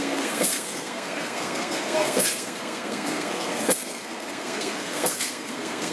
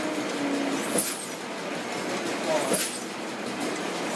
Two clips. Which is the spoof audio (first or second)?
first